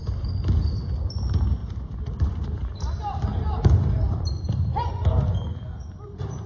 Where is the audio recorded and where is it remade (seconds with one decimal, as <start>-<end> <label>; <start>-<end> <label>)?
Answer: 0.0-1.6 recorded; 1.6-5.5 remade; 5.5-6.5 recorded